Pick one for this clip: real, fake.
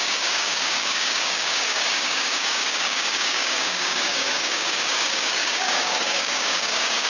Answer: fake